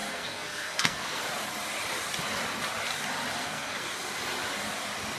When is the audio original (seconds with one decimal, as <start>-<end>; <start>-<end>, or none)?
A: 1.2-3.4; 3.9-5.2